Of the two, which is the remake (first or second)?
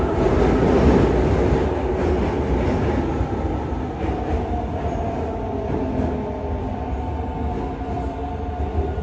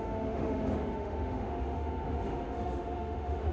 second